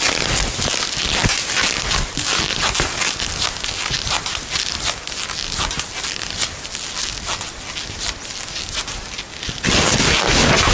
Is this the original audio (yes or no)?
yes